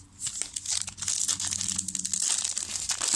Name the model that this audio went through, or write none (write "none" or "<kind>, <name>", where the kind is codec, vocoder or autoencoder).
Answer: none